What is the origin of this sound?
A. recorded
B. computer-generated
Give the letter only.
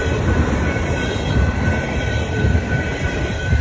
B